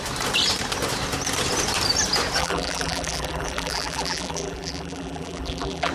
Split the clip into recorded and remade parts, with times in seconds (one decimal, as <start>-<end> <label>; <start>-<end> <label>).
0.0-2.4 recorded; 2.4-5.9 remade